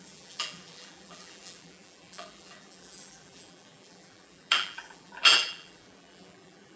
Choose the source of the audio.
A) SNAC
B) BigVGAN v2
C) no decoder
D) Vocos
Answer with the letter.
B